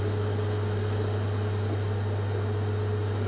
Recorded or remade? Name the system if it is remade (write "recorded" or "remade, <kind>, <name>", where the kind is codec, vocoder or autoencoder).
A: recorded